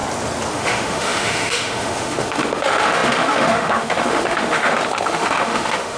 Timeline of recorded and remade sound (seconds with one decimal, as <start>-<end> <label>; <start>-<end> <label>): 0.0-0.5 recorded; 0.5-6.0 remade